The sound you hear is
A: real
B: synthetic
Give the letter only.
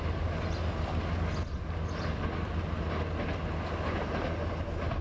A